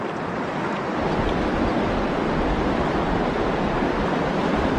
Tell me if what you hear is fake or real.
real